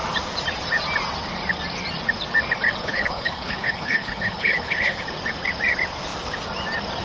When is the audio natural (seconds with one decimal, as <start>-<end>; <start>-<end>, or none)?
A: 0.0-2.8; 5.0-7.0